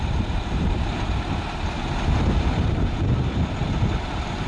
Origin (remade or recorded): remade